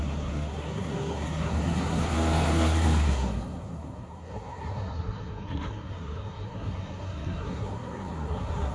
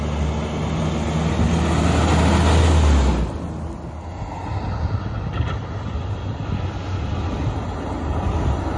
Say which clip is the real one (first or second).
second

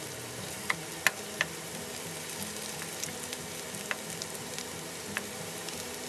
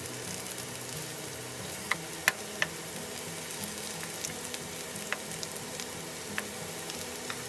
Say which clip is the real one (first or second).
second